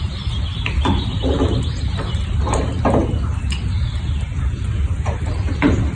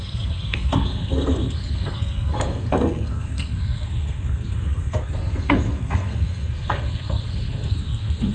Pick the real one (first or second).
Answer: first